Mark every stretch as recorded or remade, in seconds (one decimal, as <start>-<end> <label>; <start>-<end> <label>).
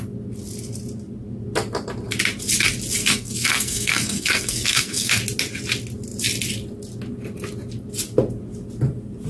0.0-3.0 recorded; 3.0-5.2 remade; 5.2-9.3 recorded